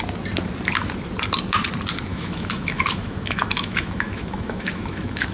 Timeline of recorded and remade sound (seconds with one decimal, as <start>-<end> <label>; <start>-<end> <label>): 0.0-2.1 recorded; 2.1-5.3 remade